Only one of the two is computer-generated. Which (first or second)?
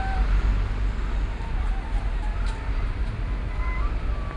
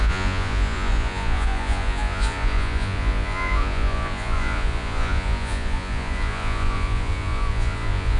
second